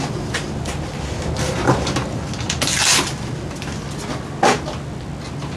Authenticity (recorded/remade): recorded